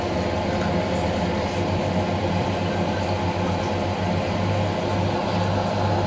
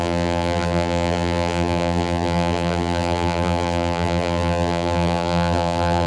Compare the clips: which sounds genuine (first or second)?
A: first